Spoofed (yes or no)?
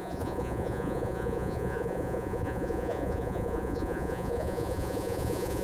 yes